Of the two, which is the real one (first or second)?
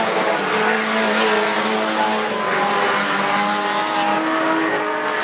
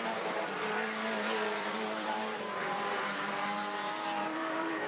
first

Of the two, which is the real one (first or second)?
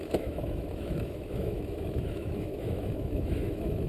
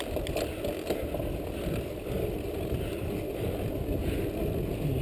second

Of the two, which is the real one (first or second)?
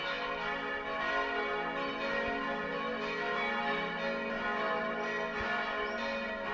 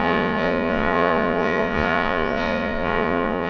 first